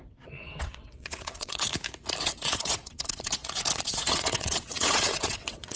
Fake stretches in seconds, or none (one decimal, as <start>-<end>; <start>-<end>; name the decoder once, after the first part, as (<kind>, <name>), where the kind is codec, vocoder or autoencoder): 0.0-1.7 (vocoder, WaveNeXt); 2.2-5.8